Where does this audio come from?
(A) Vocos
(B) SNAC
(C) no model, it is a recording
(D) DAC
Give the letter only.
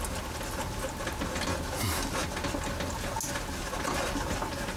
C